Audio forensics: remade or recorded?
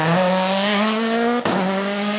remade